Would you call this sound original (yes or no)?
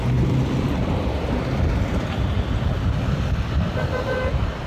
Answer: yes